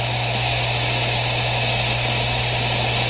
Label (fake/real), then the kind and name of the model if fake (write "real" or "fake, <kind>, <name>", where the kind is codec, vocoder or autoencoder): real